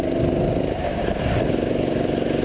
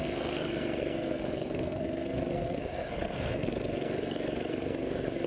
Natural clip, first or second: first